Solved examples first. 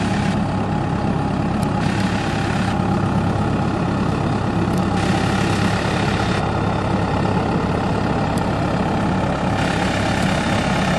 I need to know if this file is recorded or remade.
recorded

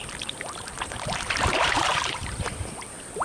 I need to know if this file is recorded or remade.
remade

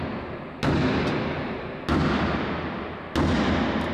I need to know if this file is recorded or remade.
recorded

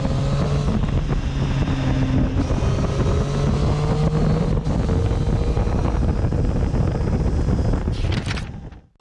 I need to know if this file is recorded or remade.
recorded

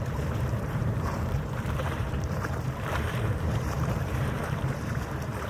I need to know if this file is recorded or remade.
remade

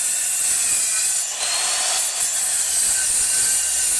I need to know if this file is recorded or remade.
recorded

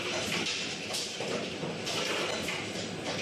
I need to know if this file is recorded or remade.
recorded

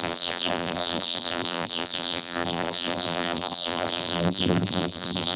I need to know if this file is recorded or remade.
remade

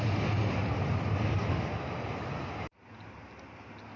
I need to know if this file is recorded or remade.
recorded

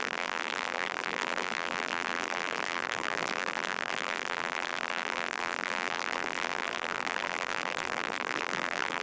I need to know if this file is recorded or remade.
remade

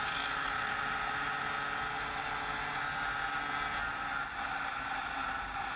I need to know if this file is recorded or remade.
recorded